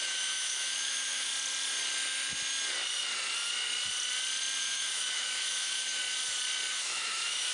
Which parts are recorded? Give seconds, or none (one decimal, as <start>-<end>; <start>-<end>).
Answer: 1.3-4.6; 6.0-6.7